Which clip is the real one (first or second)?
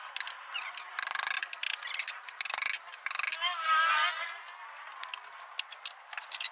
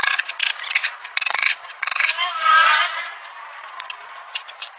first